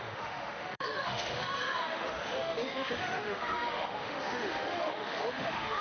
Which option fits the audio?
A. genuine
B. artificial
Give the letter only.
B